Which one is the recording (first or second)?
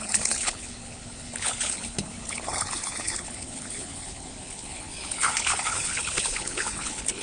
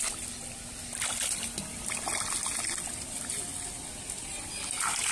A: second